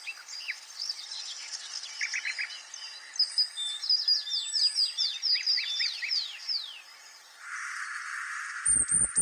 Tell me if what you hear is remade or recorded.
recorded